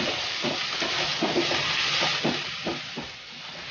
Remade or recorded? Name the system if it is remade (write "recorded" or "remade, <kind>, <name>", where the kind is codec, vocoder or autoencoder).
recorded